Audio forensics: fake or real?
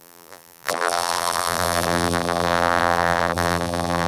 fake